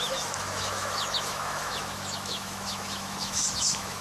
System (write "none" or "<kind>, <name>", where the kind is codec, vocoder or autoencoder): autoencoder, DAC-VAE